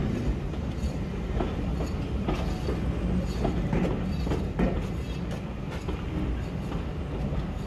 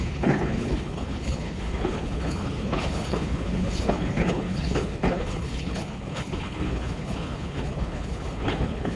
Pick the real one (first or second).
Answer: first